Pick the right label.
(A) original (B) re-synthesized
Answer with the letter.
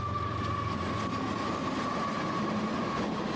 A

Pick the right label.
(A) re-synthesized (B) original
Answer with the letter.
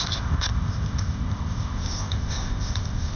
A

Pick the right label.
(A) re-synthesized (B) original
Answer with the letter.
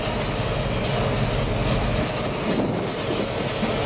B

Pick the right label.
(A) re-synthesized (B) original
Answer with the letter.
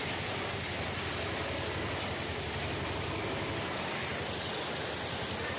B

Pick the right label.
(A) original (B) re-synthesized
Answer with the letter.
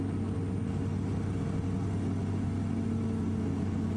A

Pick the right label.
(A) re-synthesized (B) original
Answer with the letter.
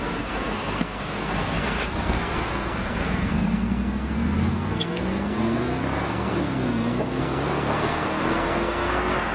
A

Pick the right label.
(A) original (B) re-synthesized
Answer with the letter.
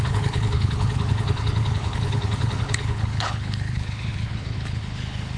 B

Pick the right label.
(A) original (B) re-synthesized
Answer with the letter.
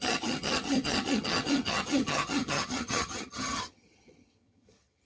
B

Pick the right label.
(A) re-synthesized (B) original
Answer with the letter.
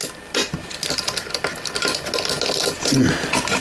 B